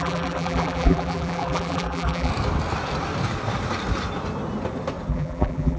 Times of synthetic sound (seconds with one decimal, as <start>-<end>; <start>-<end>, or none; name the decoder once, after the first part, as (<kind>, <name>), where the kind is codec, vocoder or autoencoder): 0.0-2.3 (vocoder, BigVGAN v2); 5.1-5.8